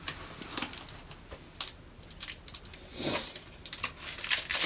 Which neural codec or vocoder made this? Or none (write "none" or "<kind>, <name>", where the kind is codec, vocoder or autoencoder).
none